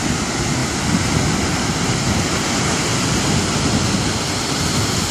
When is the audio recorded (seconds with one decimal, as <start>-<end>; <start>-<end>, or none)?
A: 0.6-1.1; 2.9-4.5